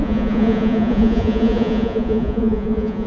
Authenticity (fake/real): fake